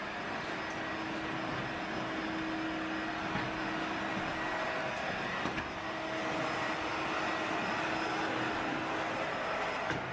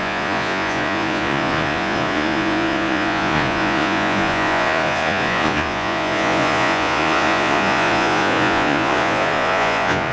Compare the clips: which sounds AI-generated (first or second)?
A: second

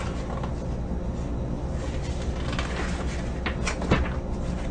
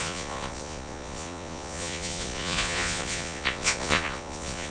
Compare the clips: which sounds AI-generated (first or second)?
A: second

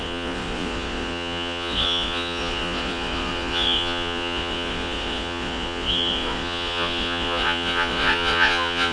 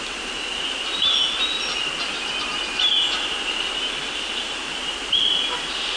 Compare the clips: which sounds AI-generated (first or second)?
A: first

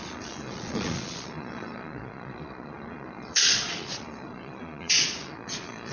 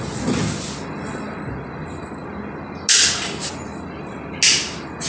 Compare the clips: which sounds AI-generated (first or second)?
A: first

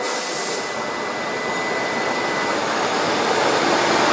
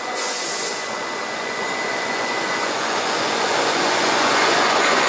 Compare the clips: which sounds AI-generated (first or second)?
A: second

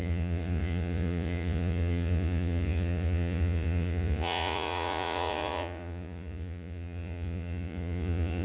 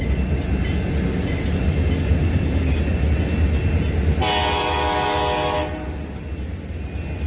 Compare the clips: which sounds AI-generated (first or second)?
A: first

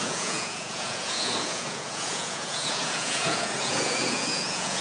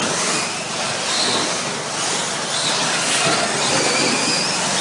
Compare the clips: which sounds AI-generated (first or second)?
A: first